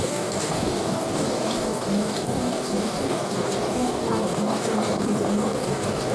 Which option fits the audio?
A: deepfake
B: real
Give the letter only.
A